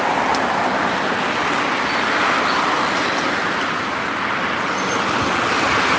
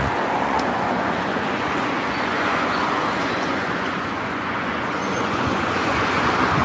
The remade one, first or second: second